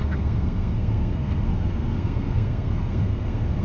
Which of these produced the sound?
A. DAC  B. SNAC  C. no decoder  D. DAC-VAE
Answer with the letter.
B